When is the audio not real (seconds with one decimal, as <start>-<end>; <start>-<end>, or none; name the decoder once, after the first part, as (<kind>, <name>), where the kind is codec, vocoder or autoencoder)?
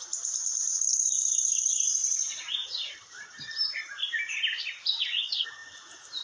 2.0-4.4 (vocoder, BigVGAN v2); 5.6-6.2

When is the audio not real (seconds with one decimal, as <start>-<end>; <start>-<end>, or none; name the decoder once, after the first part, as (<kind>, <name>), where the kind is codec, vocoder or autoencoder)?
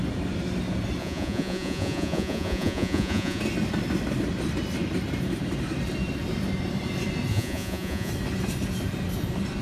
1.0-3.4 (vocoder, Vocos); 7.3-8.1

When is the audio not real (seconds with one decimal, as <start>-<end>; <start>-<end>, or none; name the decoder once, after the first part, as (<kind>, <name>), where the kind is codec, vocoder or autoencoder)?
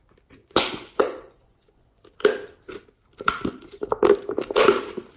0.4-2.0 (vocoder, Vocos)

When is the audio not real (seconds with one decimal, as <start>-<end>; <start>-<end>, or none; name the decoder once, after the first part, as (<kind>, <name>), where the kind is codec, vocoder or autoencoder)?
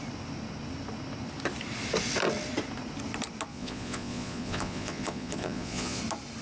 3.5-6.0 (vocoder, Vocos)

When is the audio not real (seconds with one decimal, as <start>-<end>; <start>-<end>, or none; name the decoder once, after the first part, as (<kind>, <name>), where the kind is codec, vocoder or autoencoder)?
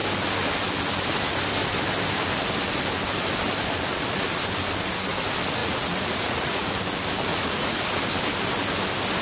5.6-6.7 (vocoder, Vocos); 7.3-7.9